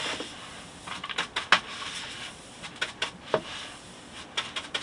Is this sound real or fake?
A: real